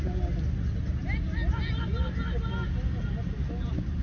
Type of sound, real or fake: real